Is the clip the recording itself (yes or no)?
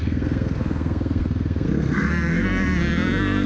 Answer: no